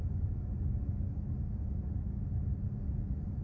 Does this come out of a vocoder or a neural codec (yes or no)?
no